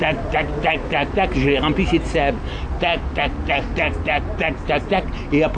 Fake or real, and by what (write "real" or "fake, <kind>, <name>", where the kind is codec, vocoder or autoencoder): real